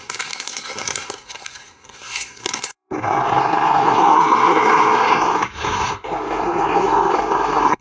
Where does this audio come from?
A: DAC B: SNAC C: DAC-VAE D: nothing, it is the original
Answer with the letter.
B